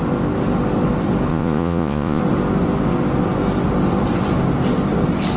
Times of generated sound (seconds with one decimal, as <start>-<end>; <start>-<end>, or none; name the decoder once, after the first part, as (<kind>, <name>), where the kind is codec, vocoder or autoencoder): 1.3-2.2 (vocoder, Vocos)